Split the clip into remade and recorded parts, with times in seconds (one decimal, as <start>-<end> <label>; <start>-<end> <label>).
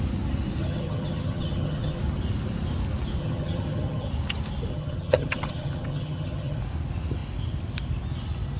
0.0-0.6 recorded; 0.6-2.0 remade; 2.0-3.2 recorded; 3.2-4.1 remade; 4.1-4.7 recorded; 4.7-6.6 remade; 6.6-8.6 recorded